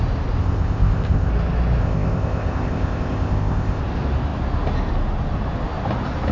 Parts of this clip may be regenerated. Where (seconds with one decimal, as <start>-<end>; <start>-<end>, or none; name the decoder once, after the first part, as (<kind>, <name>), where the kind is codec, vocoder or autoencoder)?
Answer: 0.4-1.3 (codec, ZipCodec); 1.8-3.8